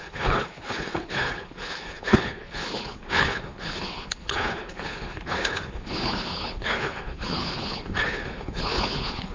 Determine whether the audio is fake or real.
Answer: fake